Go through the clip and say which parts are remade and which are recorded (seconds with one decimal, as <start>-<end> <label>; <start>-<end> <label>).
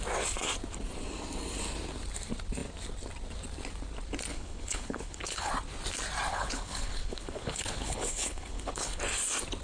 0.0-4.3 recorded; 4.3-5.5 remade; 5.5-6.3 recorded; 6.3-9.0 remade; 9.0-9.6 recorded